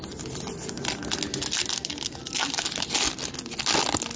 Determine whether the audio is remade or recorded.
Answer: recorded